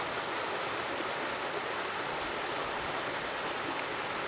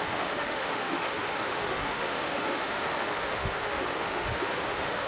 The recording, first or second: first